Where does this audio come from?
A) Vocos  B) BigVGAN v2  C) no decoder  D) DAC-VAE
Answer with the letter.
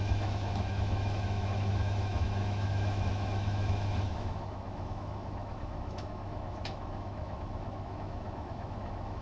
D